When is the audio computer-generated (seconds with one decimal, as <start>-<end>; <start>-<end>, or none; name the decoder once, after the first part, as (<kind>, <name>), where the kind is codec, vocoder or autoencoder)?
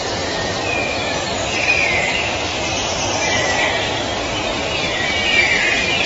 1.6-3.5 (vocoder, BigVGAN v2)